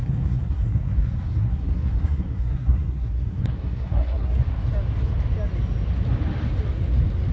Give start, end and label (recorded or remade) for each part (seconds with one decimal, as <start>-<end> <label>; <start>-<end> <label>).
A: 0.0-4.4 remade; 4.4-7.3 recorded